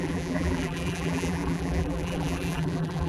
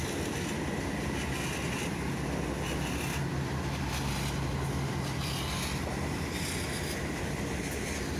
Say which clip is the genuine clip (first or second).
second